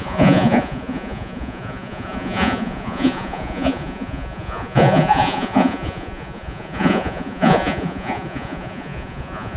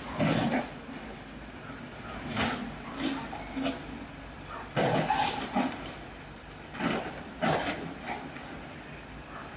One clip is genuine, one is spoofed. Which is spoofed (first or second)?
first